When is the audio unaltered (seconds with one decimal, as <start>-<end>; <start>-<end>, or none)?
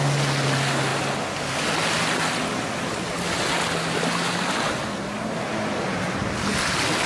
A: 0.0-7.1